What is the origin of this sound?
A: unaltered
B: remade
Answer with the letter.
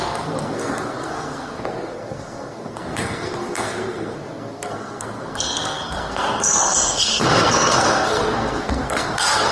B